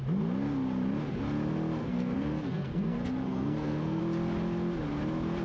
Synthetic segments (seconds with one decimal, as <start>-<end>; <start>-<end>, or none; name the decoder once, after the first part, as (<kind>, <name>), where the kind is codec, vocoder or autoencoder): 1.8-4.0 (codec, SNAC)